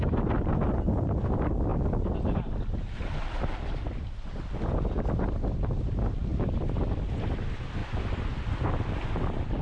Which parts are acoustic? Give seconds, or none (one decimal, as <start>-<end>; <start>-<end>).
0.0-1.7; 3.2-6.3; 6.9-7.8; 8.4-9.6